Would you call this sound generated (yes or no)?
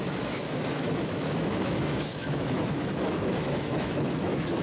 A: yes